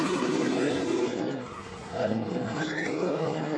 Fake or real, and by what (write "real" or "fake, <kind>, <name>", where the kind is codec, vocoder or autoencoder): fake, codec, SNAC